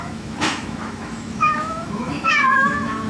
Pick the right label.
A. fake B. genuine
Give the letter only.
A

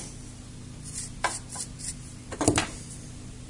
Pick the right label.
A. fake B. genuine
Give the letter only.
B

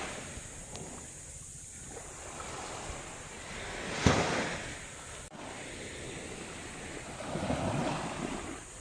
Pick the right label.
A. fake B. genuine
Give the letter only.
B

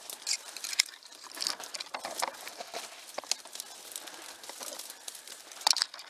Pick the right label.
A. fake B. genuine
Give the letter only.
B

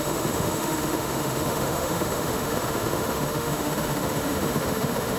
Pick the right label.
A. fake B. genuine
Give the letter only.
A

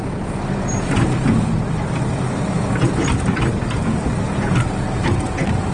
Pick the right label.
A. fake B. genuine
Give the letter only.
B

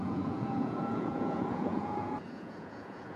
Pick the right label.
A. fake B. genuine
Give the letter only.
A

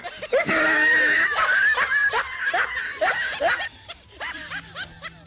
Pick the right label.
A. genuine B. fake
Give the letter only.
A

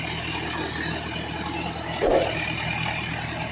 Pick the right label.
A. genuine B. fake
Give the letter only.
A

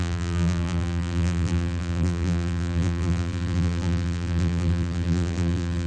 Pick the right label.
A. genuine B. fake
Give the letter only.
B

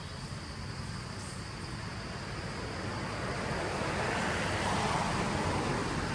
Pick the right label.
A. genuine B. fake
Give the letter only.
A